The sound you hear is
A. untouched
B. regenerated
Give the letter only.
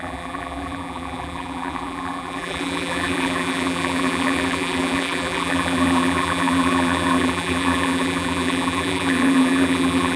B